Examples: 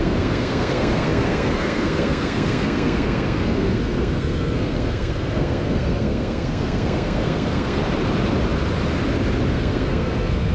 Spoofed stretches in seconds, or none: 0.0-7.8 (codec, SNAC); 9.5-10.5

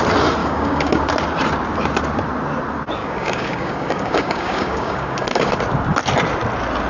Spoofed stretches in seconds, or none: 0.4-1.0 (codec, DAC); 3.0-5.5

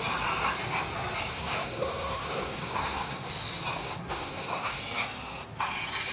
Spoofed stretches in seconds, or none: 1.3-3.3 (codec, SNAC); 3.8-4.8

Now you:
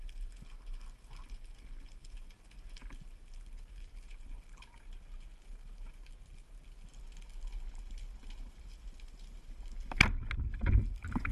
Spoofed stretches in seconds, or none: none

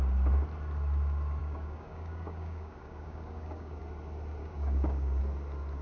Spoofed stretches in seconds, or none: 1.4-3.8 (codec, DAC); 4.4-5.2

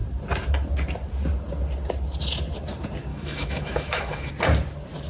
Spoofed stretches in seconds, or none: 3.1-4.3 (autoencoder, DAC-VAE)

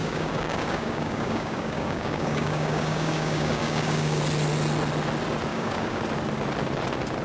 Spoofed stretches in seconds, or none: 0.0-4.2 (codec, DAC); 5.5-6.0

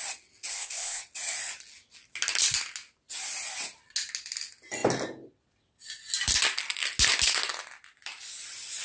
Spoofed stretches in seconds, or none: 0.5-1.0 (codec, ZipCodec)